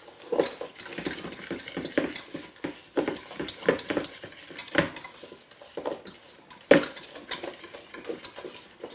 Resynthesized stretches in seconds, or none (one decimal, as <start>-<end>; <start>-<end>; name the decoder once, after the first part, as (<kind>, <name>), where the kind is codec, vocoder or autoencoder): none